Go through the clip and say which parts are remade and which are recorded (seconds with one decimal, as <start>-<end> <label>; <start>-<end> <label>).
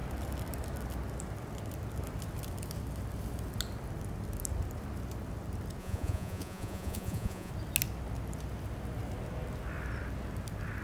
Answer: 0.0-5.8 recorded; 5.8-7.5 remade; 7.5-10.8 recorded